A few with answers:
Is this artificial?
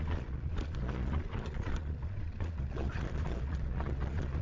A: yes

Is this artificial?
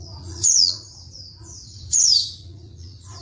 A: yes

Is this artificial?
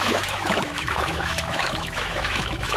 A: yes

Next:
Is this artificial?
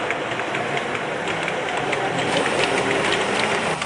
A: no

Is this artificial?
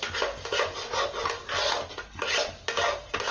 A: no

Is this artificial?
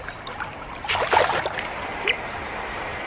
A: no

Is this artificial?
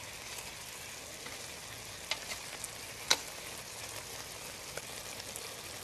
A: no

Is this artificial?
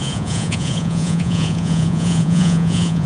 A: yes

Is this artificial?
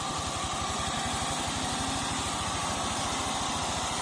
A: no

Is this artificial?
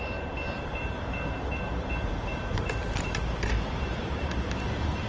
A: yes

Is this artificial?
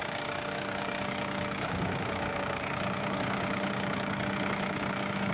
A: yes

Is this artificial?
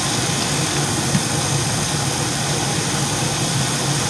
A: no